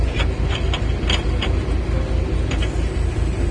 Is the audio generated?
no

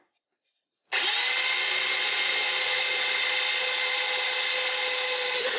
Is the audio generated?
no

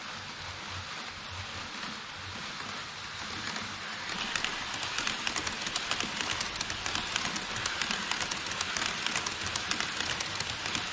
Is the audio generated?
no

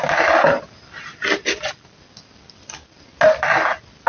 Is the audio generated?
no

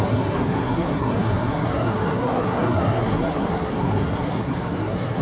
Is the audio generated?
yes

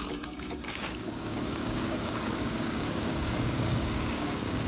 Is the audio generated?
yes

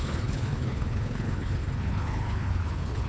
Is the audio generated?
yes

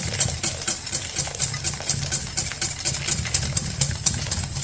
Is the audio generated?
no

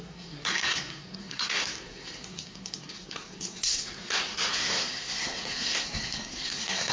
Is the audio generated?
yes